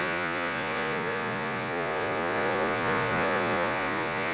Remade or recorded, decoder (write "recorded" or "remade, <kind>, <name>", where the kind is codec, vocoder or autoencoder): remade, vocoder, Vocos